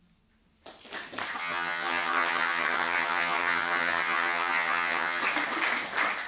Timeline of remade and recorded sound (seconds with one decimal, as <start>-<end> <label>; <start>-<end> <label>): 0.0-1.4 recorded; 1.4-5.2 remade; 5.2-6.3 recorded